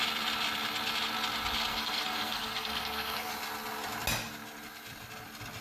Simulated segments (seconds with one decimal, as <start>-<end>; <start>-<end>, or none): 1.7-3.3